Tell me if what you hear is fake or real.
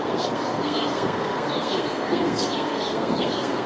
fake